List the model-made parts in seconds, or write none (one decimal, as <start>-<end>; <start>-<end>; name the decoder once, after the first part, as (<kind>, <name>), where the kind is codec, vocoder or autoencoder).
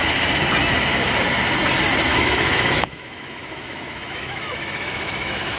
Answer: 2.1-5.6 (autoencoder, DAC-VAE)